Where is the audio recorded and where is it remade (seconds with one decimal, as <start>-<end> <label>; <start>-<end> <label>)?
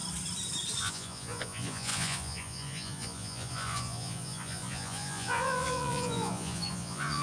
0.0-0.8 recorded; 0.8-7.2 remade